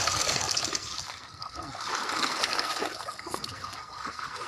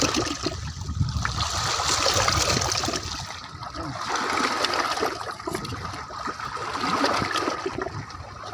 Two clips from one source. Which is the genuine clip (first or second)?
second